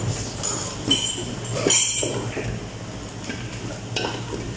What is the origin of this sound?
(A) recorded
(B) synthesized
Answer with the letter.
A